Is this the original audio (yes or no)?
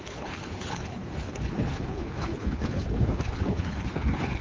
no